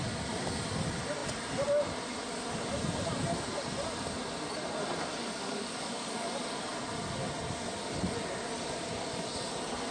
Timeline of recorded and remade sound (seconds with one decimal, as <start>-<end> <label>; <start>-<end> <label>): 0.0-5.2 recorded; 5.2-6.3 remade; 6.3-9.9 recorded